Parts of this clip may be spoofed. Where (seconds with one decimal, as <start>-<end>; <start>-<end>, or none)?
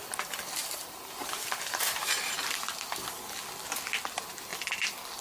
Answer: 0.6-2.3